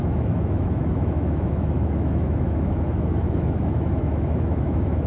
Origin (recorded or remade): remade